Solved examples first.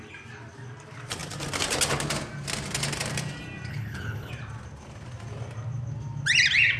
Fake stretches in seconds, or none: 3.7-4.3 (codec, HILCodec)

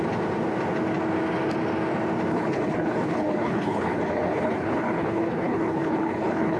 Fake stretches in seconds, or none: 2.3-6.6 (codec, HILCodec)

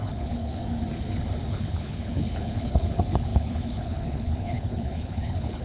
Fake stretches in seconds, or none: 0.0-0.6 (codec, HILCodec); 1.5-5.6

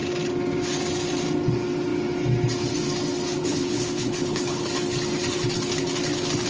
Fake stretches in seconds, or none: 3.4-4.7 (codec, HILCodec)

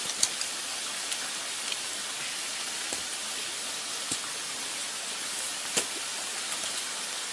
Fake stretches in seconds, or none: none

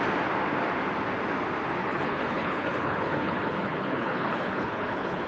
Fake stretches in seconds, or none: 1.8-5.3 (codec, HILCodec)